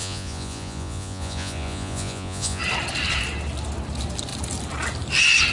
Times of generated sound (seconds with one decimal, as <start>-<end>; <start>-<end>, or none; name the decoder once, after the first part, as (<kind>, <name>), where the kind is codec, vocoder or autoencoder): 0.0-2.6 (vocoder, Vocos)